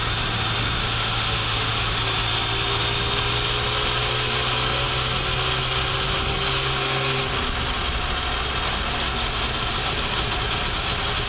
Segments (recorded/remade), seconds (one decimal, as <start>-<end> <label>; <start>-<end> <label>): 0.0-0.8 recorded; 0.8-2.0 remade; 2.0-11.3 recorded